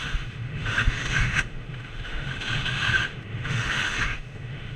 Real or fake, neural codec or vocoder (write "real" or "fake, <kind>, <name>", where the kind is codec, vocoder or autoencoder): fake, autoencoder, DAC-VAE